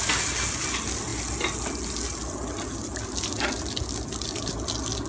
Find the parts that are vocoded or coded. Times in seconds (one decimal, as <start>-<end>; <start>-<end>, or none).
none